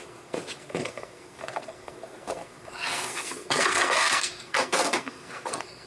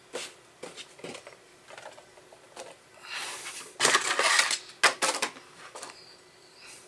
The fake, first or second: first